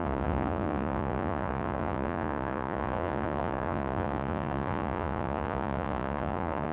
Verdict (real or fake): fake